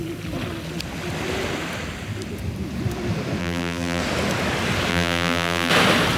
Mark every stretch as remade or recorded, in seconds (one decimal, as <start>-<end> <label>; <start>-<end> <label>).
0.0-3.4 recorded; 3.4-4.0 remade; 4.0-4.9 recorded; 4.9-5.7 remade; 5.7-6.2 recorded